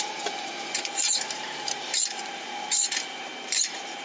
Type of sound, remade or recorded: remade